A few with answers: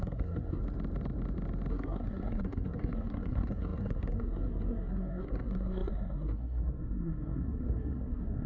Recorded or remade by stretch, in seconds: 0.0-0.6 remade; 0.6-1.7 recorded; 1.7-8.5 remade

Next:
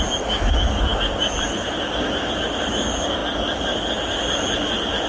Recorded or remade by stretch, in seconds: 0.0-5.1 recorded

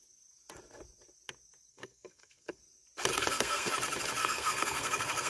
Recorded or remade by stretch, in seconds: 0.0-1.7 recorded; 1.7-2.6 remade; 2.6-3.1 recorded; 3.1-3.7 remade; 3.7-4.2 recorded; 4.2-5.3 remade

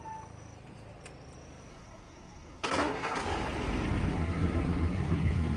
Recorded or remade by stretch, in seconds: 0.0-1.7 recorded; 1.7-3.2 remade; 3.2-4.1 recorded; 4.1-5.6 remade

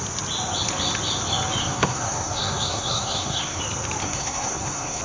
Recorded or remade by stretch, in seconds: 0.0-1.6 recorded; 1.6-3.6 remade; 3.6-4.0 recorded; 4.0-5.0 remade